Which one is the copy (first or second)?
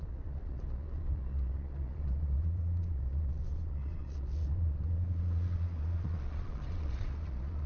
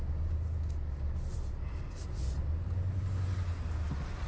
first